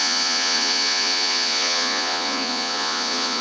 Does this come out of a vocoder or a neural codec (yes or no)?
yes